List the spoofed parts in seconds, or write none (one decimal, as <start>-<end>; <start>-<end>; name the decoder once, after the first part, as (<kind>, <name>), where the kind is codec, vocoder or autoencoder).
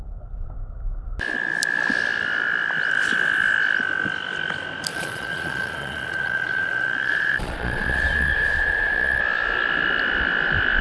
4.9-9.2 (vocoder, Vocos)